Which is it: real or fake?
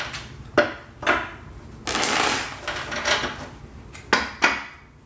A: real